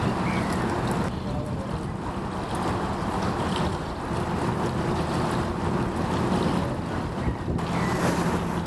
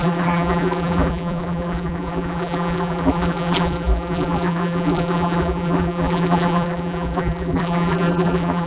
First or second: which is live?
first